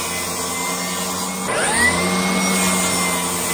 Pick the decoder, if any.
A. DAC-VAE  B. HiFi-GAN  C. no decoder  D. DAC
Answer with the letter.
C